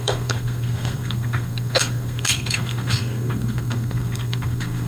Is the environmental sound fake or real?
fake